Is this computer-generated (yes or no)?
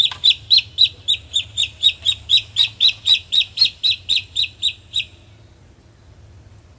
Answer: no